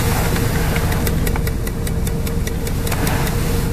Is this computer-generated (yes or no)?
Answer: no